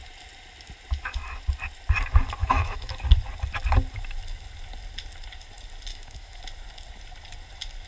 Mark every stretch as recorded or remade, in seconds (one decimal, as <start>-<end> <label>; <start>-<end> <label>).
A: 0.0-2.4 recorded; 2.4-2.9 remade; 2.9-5.9 recorded; 5.9-6.4 remade; 6.4-7.9 recorded

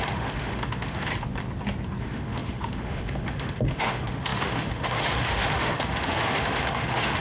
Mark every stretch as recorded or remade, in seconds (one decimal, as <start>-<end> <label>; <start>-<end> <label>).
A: 0.0-1.1 remade; 1.1-2.0 recorded; 2.0-7.2 remade

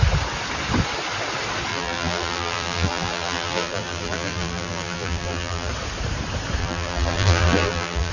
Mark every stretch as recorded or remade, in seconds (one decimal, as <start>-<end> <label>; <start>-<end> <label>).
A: 0.0-1.7 recorded; 1.7-5.7 remade; 5.7-6.6 recorded; 6.6-8.1 remade

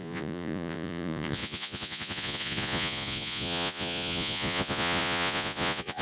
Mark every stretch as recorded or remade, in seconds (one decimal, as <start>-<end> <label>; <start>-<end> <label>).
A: 0.0-6.0 remade

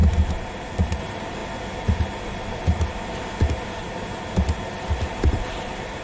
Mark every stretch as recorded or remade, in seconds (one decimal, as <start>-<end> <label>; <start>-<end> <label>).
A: 0.0-1.0 recorded; 1.0-1.4 remade; 1.4-5.0 recorded; 5.0-6.0 remade

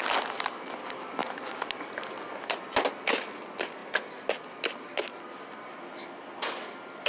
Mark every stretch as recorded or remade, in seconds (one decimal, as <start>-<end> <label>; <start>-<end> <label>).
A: 0.0-7.1 recorded

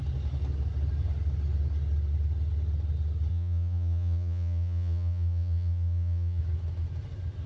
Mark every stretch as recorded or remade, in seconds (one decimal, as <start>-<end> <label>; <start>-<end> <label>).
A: 0.0-3.3 recorded; 3.3-6.4 remade; 6.4-7.5 recorded